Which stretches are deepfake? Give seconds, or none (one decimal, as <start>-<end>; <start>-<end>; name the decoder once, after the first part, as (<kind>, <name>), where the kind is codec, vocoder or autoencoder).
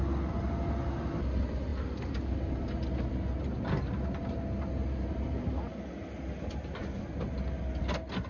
none